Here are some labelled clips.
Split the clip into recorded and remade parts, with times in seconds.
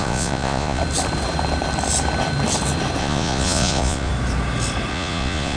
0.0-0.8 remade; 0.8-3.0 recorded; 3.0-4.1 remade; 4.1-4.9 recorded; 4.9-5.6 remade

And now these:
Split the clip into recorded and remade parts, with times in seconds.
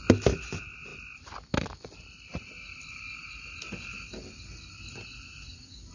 0.0-5.9 recorded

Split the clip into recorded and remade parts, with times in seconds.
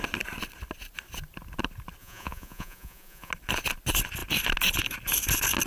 0.0-2.0 recorded; 2.0-3.3 remade; 3.3-5.7 recorded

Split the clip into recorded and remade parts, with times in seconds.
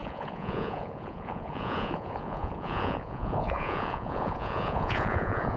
0.0-5.6 remade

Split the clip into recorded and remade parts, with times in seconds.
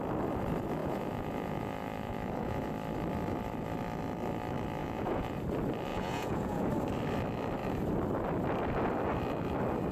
0.0-0.8 recorded; 0.8-2.7 remade; 2.7-4.8 recorded; 4.8-5.4 remade; 5.4-5.9 recorded; 5.9-6.7 remade; 6.7-9.9 recorded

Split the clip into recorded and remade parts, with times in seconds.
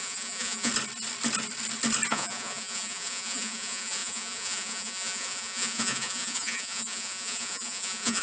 0.0-0.7 remade; 0.7-2.1 recorded; 2.1-8.2 remade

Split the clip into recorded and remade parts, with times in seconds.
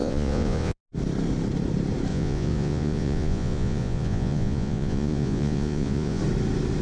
0.0-0.8 remade; 0.8-2.1 recorded; 2.1-6.2 remade; 6.2-6.8 recorded